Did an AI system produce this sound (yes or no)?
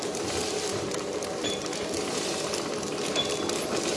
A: no